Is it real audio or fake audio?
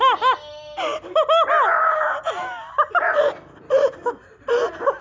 real